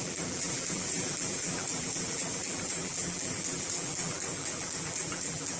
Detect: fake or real fake